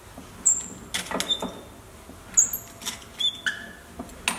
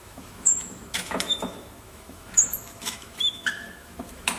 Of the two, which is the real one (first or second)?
first